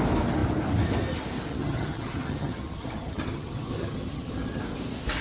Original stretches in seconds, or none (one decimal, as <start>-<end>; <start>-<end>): 0.0-1.5; 4.6-5.2